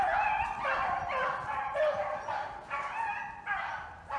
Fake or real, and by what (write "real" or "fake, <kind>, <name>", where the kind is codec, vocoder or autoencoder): real